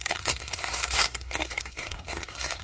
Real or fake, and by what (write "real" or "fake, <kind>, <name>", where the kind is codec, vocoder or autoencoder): fake, codec, SNAC